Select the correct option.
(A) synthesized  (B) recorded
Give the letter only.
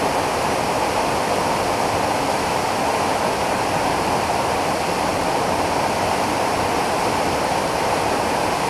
B